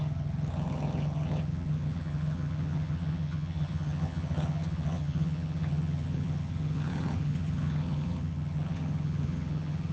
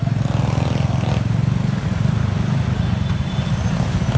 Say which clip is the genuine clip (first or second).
second